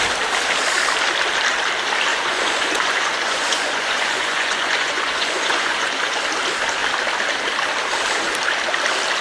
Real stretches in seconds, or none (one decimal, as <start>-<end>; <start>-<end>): 0.0-2.1; 6.2-9.2